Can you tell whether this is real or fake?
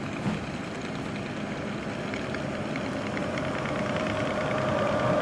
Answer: real